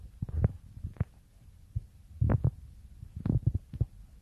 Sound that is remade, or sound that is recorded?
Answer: recorded